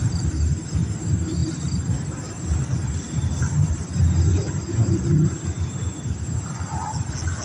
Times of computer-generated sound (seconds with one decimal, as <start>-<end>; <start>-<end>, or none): none